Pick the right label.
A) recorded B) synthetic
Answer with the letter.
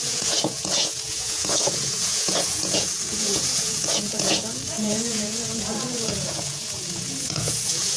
B